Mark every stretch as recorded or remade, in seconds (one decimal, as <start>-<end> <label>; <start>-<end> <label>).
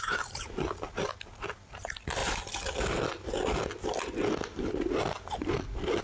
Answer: 0.0-6.0 recorded